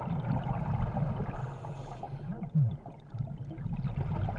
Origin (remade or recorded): recorded